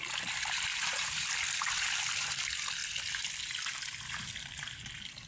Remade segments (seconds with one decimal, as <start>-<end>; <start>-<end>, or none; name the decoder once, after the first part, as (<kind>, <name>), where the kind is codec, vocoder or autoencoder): 0.7-1.3 (vocoder, BigVGAN v2)